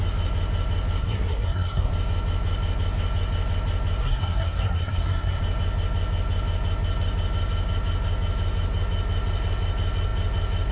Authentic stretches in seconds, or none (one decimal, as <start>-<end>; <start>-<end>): 0.0-1.0; 1.9-4.0; 5.4-10.7